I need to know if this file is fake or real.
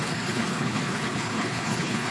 fake